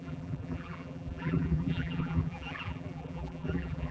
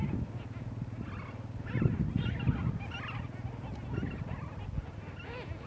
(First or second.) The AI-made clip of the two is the first